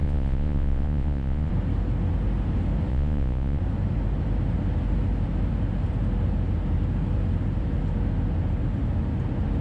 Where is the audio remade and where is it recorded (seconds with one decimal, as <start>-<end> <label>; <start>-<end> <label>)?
0.0-1.5 remade; 1.5-2.9 recorded; 2.9-3.6 remade; 3.6-9.6 recorded